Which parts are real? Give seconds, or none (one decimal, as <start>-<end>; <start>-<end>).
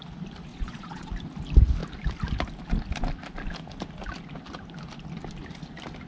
0.0-0.5; 1.1-6.1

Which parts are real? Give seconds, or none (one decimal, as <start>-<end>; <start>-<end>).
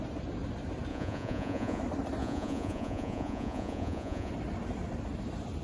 0.0-0.9; 1.8-2.2; 4.3-5.6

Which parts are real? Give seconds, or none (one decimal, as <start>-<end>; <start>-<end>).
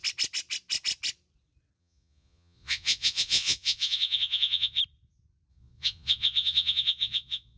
0.0-1.8; 4.8-5.5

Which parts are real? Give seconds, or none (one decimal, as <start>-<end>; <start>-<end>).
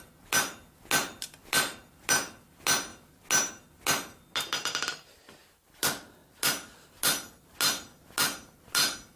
0.0-9.2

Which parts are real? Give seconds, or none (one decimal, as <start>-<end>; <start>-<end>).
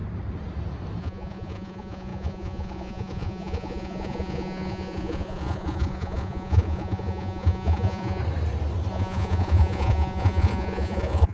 0.0-1.0; 8.2-8.9